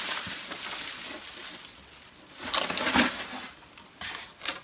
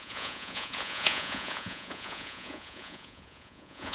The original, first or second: first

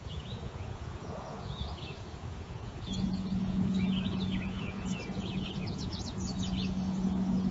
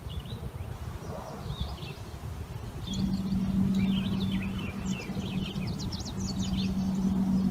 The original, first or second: second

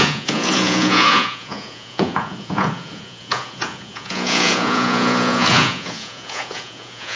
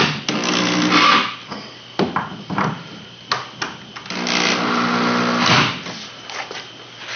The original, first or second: second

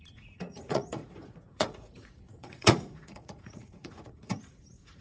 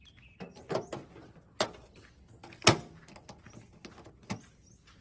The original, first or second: second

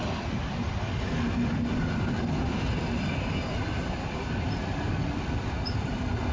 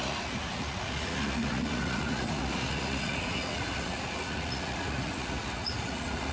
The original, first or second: first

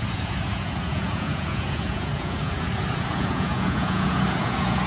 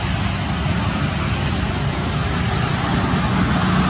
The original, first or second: second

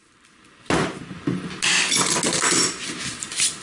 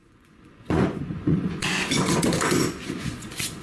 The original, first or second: first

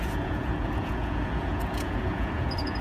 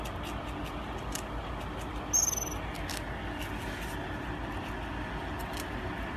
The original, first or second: second